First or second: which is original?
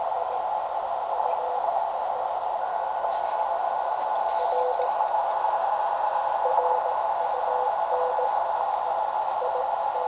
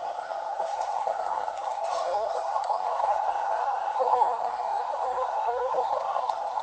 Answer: first